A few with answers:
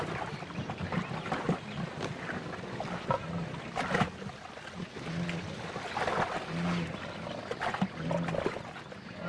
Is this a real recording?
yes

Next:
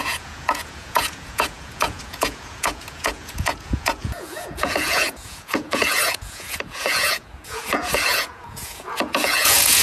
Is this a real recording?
no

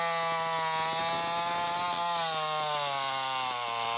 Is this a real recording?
yes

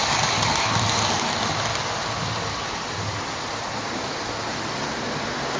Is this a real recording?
yes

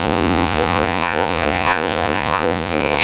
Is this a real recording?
no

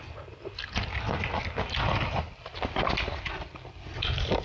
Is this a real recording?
yes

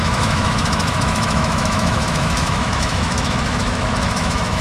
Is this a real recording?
no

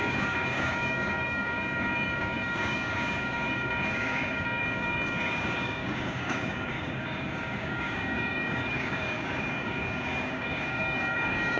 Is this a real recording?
no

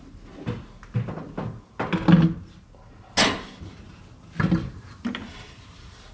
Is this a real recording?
yes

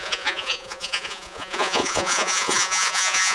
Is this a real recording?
no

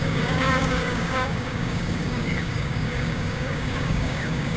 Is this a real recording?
no